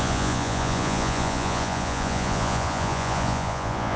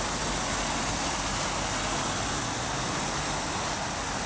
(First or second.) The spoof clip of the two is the first